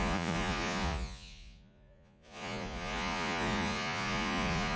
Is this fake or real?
fake